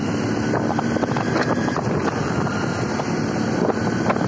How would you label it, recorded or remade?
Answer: recorded